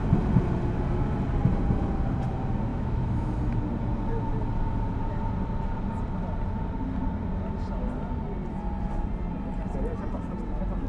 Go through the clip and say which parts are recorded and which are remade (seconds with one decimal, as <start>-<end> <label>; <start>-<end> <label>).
0.0-2.7 recorded; 2.7-3.4 remade; 3.4-10.9 recorded